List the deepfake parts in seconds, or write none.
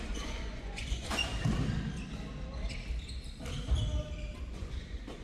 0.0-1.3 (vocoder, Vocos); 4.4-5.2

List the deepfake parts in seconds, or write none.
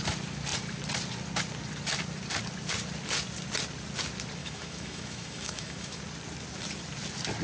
4.4-6.0 (autoencoder, DAC-VAE)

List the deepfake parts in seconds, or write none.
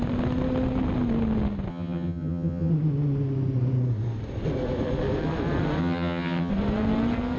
1.7-2.7 (vocoder, HiFi-GAN); 5.8-6.5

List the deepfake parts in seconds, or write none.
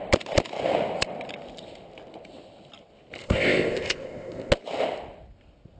3.2-4.5 (codec, ZipCodec)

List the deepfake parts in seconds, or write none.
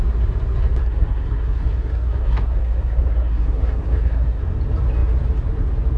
0.8-4.4 (codec, SNAC)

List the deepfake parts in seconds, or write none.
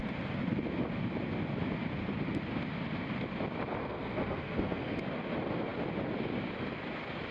3.8-5.0 (codec, SNAC)